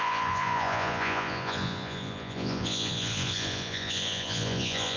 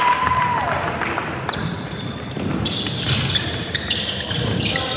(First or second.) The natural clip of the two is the second